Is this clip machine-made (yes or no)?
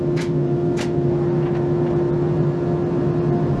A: no